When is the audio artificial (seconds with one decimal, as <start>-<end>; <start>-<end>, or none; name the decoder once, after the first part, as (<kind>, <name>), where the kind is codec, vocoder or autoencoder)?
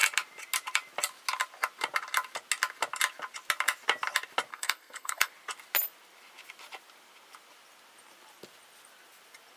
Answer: 4.5-5.3 (codec, SNAC)